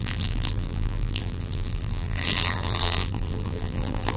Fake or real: fake